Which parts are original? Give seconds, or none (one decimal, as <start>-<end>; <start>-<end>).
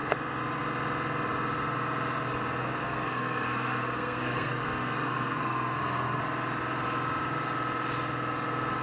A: 0.0-2.6; 6.2-8.8